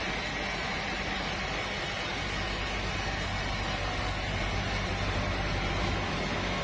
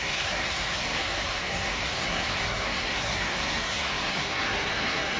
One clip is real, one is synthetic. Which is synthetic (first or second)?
second